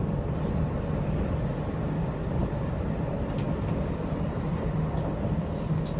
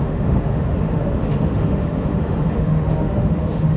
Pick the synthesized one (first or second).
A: second